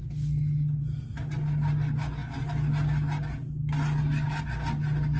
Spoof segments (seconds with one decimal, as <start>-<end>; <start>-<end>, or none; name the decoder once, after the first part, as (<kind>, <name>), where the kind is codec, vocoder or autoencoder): none